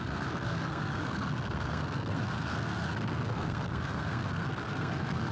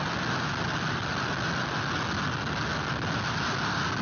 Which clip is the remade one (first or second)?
first